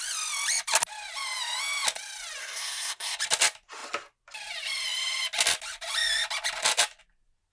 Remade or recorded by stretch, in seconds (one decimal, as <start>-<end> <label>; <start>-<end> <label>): 0.0-2.4 recorded; 2.4-3.2 remade; 3.2-7.5 recorded